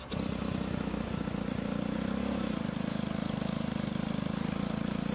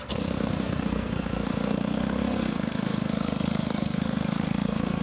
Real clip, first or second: first